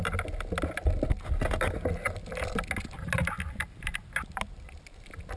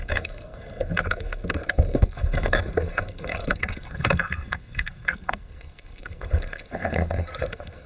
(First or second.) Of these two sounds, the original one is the first